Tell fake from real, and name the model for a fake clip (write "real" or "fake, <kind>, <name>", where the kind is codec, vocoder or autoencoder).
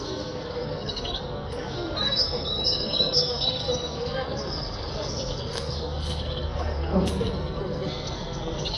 fake, codec, SNAC